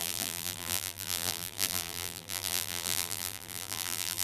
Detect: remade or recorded remade